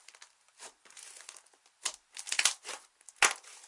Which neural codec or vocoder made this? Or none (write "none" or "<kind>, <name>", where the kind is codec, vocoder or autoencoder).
none